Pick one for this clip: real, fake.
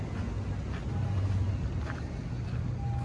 real